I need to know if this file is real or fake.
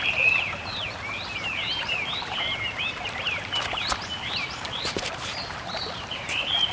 fake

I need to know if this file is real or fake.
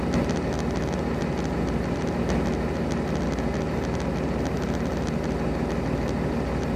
real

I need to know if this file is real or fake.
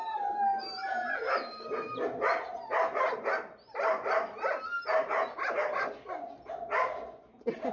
real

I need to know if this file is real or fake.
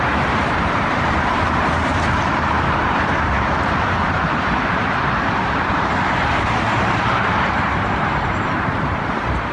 fake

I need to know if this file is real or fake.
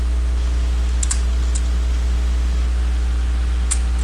real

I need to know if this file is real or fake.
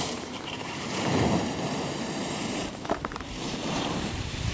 fake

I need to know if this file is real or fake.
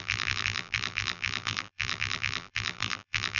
fake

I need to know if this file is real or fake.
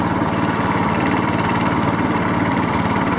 fake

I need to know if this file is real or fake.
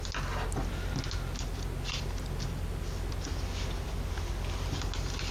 real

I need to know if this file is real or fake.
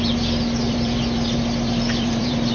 fake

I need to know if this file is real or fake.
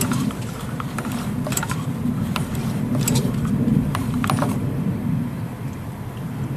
fake